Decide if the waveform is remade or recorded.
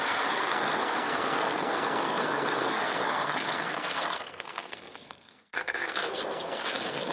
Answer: remade